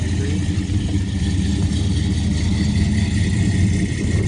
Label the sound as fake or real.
real